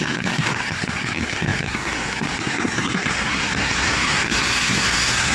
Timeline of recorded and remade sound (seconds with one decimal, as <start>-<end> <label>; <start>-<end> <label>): 0.0-5.3 remade